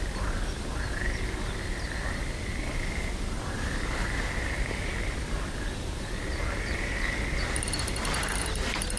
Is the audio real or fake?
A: fake